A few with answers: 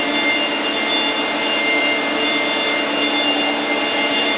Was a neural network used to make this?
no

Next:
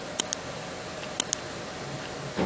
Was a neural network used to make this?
no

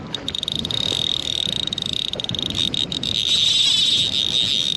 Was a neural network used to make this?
no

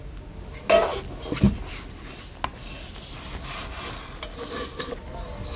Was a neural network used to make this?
no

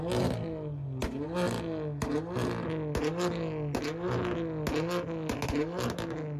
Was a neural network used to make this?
no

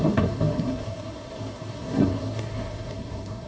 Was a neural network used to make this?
yes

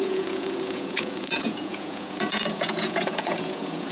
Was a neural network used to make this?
yes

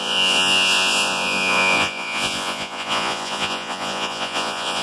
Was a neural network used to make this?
yes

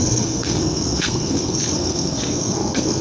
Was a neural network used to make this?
yes